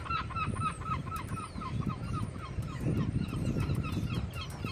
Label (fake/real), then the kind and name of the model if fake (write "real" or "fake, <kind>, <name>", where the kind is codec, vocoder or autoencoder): fake, vocoder, BigVGAN v2